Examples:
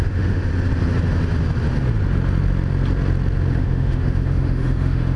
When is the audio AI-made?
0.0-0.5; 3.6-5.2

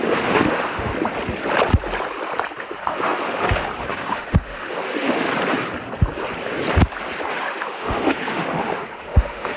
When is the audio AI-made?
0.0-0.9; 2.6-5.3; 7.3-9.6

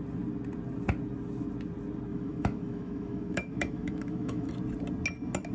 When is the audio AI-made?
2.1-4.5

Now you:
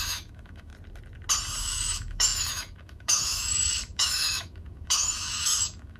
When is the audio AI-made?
0.0-0.7; 1.6-6.0

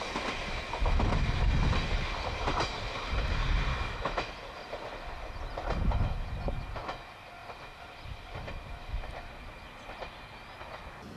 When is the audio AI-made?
3.7-4.3